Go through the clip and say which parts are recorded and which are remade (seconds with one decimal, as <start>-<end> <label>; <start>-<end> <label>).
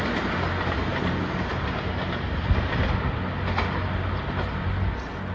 0.0-5.3 recorded